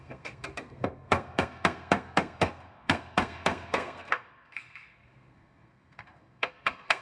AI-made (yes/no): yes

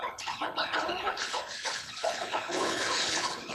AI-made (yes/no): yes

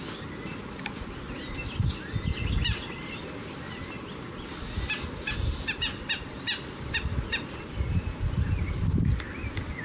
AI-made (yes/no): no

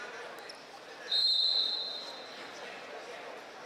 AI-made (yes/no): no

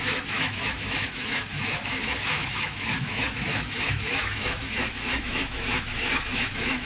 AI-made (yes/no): yes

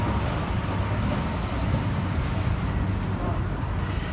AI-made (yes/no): no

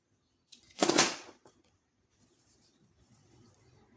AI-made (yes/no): yes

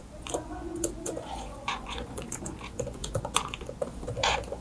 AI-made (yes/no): yes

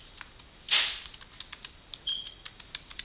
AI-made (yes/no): no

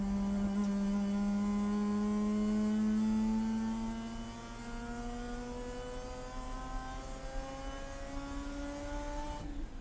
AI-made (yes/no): no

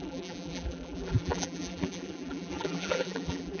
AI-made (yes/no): yes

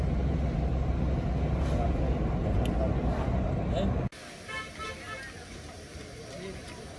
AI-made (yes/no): no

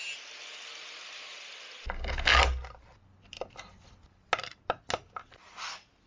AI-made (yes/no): no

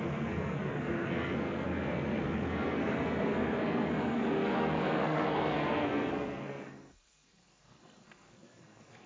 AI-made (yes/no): yes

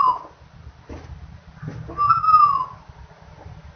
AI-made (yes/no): no